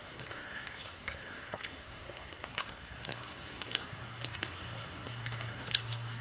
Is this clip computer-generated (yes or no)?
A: yes